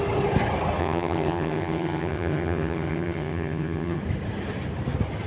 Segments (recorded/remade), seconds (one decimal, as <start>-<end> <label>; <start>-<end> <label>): 0.0-0.8 recorded; 0.8-4.0 remade; 4.0-5.3 recorded